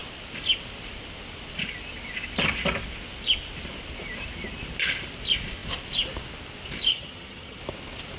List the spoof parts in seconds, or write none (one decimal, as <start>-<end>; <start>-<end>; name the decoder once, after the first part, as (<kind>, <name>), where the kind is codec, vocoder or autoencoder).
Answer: 6.9-7.6 (vocoder, HiFi-GAN)